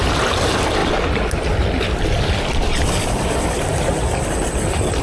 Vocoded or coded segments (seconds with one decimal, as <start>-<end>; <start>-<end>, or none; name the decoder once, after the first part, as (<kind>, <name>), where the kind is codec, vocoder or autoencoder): none